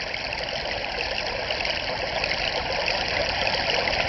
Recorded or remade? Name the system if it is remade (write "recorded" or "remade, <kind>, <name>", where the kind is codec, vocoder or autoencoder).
recorded